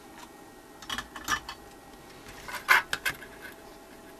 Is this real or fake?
real